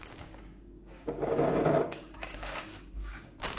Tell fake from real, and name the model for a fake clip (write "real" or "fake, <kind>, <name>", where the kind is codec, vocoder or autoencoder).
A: fake, codec, DAC